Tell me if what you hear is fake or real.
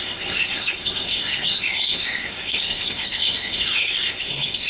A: fake